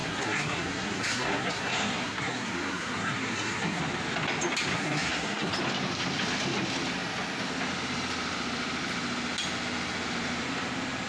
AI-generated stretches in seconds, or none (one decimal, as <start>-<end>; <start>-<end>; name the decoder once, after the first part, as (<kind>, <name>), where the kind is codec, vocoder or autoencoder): 0.0-3.8 (codec, SNAC); 4.7-5.5